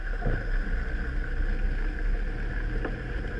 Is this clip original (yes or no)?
yes